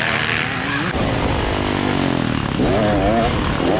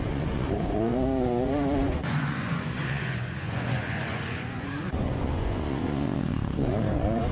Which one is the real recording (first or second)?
first